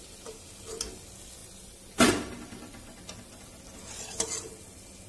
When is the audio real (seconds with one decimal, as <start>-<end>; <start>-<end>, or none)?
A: 0.0-5.1